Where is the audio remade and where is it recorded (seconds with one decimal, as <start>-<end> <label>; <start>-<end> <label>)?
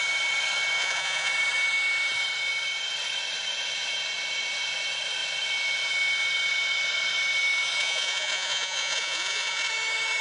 0.0-0.8 recorded; 0.8-1.3 remade; 1.3-7.8 recorded; 7.8-9.7 remade; 9.7-10.2 recorded